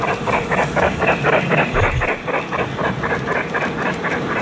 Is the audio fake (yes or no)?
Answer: no